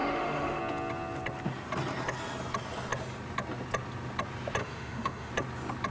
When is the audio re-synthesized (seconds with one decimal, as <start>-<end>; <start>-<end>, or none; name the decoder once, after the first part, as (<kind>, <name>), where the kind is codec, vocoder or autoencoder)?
0.0-0.6 (autoencoder, DAC-VAE); 4.6-5.3